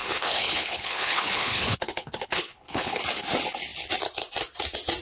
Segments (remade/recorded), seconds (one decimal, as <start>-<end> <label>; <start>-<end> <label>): 0.0-3.0 remade; 3.0-5.0 recorded